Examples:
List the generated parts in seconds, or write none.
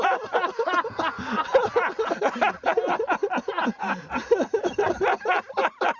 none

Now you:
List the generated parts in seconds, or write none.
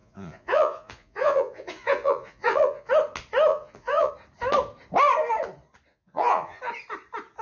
0.0-2.9 (vocoder, Vocos); 3.5-4.1; 5.9-6.6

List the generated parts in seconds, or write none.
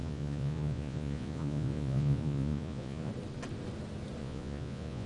0.0-3.1 (vocoder, Vocos); 4.2-5.1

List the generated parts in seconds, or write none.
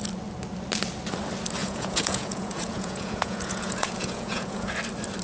1.6-4.7 (vocoder, Vocos)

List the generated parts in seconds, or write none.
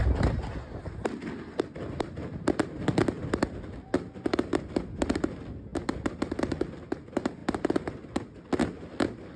none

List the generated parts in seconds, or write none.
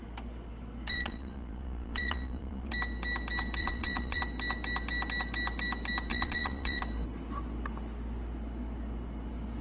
0.9-2.7 (vocoder, Vocos); 3.6-4.2; 6.1-6.8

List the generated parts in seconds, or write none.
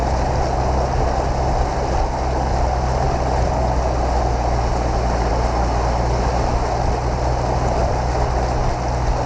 none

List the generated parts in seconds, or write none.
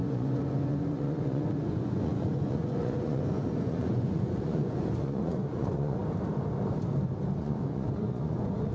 0.0-6.0 (vocoder, Vocos); 7.4-8.7